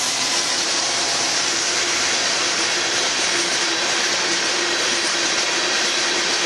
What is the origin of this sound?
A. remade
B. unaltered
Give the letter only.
A